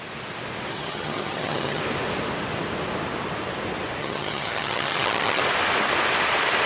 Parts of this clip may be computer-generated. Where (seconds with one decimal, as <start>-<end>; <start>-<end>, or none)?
0.7-1.8; 4.0-5.4